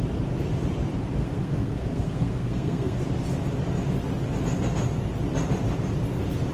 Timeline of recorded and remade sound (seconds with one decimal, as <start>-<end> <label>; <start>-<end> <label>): 0.0-1.2 recorded; 1.2-3.0 remade; 3.0-6.5 recorded